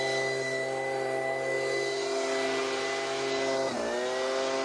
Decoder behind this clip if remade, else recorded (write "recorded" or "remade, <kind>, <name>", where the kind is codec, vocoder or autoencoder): recorded